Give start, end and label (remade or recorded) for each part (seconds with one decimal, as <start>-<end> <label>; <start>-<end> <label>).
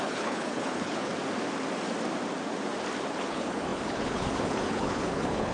0.0-1.1 remade; 1.1-3.1 recorded; 3.1-5.5 remade